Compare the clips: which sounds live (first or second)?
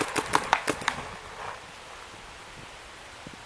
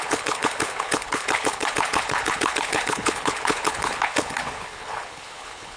first